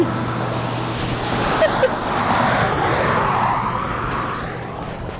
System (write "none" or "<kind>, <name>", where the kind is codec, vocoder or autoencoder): none